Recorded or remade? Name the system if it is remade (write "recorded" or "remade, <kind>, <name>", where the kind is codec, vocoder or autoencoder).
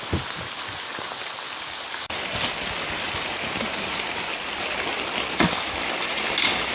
recorded